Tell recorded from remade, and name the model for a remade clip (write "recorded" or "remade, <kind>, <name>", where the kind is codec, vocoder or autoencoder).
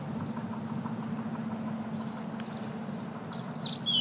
recorded